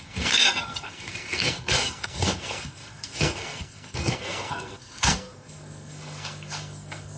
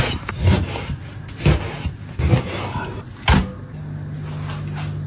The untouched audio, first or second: second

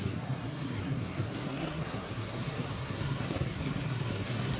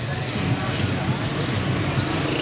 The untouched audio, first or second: second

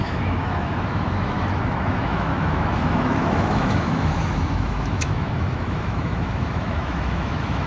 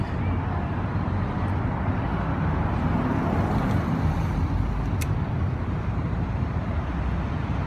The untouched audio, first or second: second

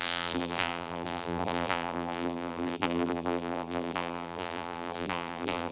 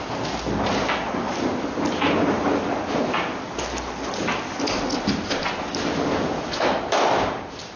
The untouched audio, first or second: second